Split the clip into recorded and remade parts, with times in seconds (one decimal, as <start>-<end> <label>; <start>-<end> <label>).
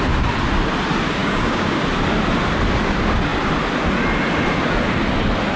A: 0.0-1.2 recorded; 1.2-1.8 remade; 1.8-5.6 recorded